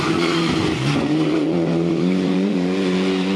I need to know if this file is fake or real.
fake